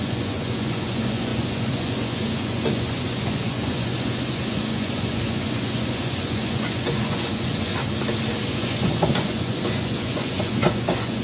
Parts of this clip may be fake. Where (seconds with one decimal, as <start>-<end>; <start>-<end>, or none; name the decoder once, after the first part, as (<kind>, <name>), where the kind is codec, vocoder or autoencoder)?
0.0-7.7 (vocoder, Vocos); 8.4-11.2